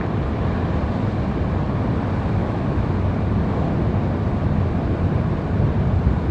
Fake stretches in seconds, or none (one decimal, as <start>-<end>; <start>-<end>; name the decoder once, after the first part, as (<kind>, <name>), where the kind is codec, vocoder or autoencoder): 2.4-2.9 (autoencoder, DAC-VAE)